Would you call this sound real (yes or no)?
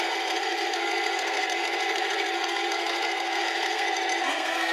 no